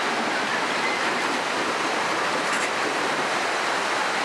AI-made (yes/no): no